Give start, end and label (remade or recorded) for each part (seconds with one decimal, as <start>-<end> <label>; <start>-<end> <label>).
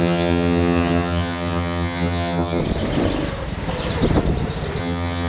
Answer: 0.0-2.6 remade; 2.6-4.8 recorded; 4.8-5.3 remade